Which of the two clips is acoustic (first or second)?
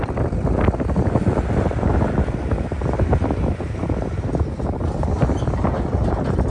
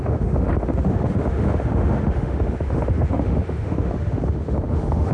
first